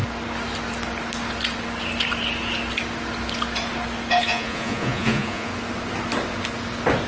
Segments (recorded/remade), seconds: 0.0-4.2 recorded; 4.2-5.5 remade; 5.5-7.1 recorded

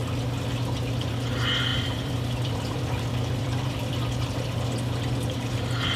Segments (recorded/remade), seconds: 0.0-1.7 recorded; 1.7-3.9 remade; 3.9-6.0 recorded

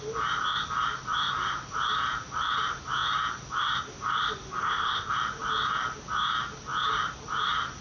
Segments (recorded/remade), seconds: 0.0-4.6 recorded; 4.6-5.1 remade; 5.1-7.8 recorded